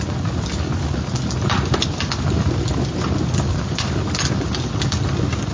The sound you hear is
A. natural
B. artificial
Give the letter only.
A